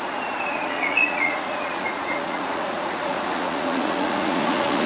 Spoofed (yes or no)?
yes